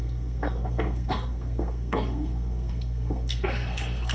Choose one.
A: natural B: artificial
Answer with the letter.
B